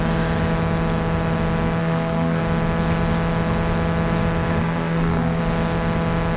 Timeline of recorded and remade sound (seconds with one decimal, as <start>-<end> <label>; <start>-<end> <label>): 0.0-1.8 recorded; 1.8-2.4 remade; 2.4-4.6 recorded; 4.6-5.4 remade; 5.4-6.4 recorded